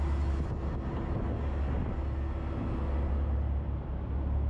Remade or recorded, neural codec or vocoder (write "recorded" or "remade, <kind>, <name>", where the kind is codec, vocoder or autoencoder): recorded